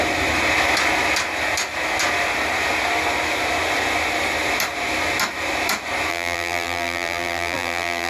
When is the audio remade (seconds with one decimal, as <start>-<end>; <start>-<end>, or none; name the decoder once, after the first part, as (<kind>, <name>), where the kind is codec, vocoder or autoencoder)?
6.1-8.1 (vocoder, BigVGAN v2)